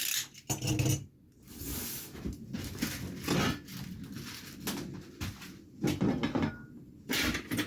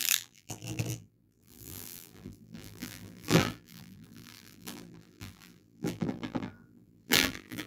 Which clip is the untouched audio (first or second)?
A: first